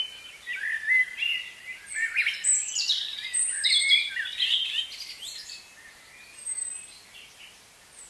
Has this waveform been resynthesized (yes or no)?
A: no